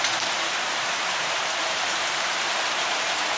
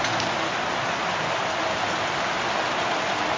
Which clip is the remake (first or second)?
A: first